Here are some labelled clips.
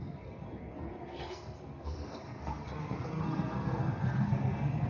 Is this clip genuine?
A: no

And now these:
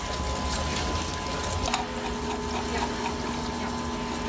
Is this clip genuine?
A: yes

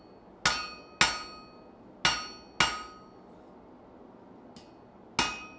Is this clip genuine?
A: yes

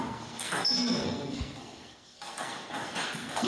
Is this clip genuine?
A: no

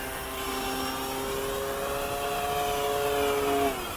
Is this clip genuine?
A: yes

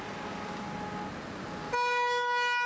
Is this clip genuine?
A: yes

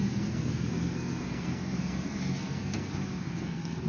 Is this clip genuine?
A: no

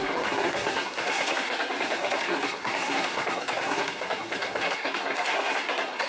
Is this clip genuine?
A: no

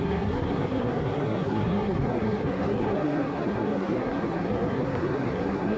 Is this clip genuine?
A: no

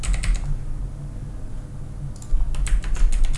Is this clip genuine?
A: yes